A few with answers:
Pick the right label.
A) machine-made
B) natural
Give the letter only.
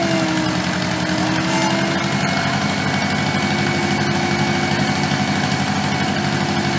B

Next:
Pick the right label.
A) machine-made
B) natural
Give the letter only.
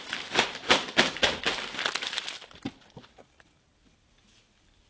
B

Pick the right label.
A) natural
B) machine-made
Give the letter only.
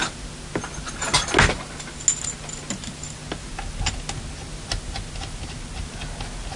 A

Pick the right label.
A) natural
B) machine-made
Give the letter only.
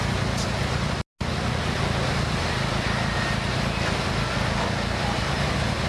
A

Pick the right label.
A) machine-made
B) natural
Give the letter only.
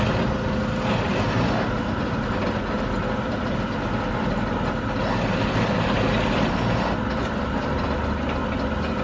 B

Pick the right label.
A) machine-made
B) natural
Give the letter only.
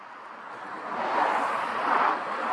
B